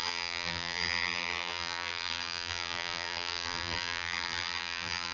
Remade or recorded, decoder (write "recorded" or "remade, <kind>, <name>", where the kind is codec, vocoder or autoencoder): remade, vocoder, BigVGAN v2